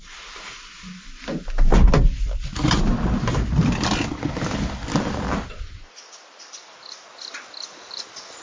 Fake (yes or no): no